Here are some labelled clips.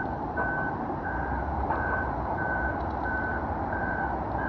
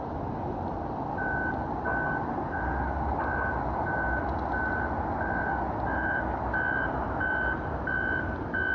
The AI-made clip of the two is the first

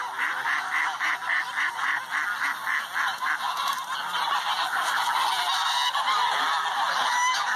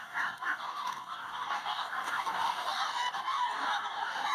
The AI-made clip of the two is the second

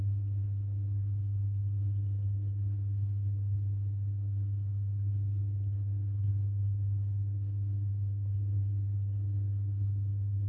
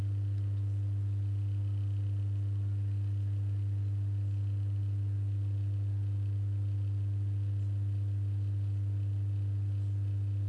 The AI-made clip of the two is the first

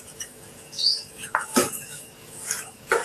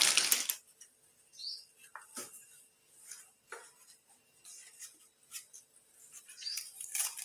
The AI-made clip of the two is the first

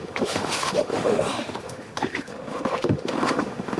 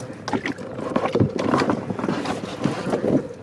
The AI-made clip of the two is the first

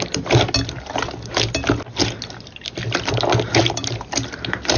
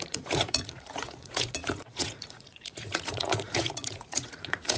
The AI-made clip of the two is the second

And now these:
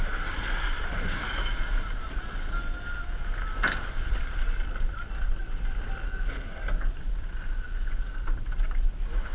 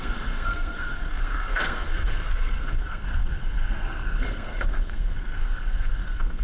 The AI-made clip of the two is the second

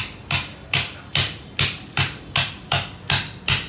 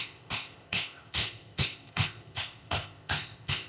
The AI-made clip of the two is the second